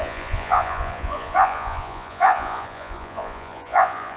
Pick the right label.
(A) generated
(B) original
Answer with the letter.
A